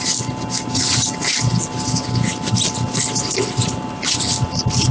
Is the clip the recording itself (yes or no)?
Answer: yes